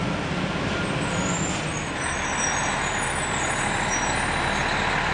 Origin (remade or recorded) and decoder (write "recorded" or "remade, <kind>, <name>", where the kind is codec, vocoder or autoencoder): recorded